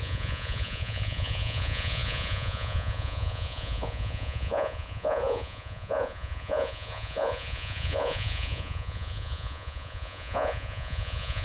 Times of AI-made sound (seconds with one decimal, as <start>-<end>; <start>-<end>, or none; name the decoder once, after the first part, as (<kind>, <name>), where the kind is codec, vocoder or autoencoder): 0.0-11.4 (vocoder, Vocos)